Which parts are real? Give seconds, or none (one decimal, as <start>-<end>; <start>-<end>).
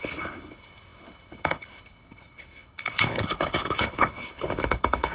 none